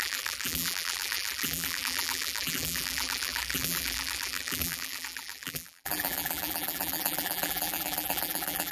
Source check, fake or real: fake